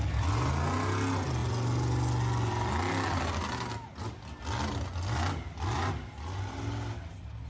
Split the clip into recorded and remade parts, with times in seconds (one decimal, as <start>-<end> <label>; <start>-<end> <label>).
0.0-7.5 recorded

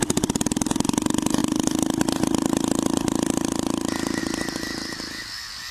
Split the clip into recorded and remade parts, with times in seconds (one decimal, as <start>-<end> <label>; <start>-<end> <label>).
0.0-5.7 recorded

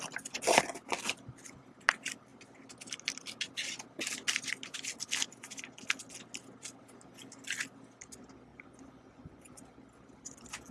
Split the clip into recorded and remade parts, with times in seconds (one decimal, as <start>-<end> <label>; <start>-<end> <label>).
0.0-8.5 recorded; 8.5-9.6 remade; 9.6-10.7 recorded

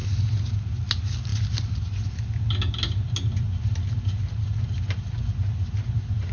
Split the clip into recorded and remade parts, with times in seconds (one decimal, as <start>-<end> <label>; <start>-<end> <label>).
0.0-6.3 recorded

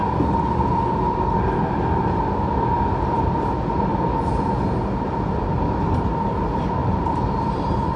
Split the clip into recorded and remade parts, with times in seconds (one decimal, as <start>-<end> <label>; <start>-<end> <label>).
0.0-3.9 recorded; 3.9-5.5 remade; 5.5-6.8 recorded; 6.8-8.0 remade

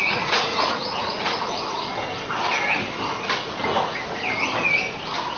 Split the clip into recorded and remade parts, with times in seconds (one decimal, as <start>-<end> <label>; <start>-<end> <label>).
0.0-2.0 remade; 2.0-3.4 recorded; 3.4-4.2 remade; 4.2-5.4 recorded

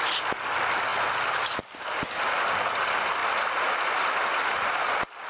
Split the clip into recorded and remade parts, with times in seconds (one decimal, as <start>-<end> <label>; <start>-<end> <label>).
0.0-5.3 recorded

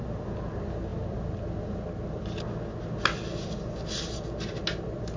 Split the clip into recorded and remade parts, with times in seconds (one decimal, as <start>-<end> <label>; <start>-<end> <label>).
0.0-5.2 recorded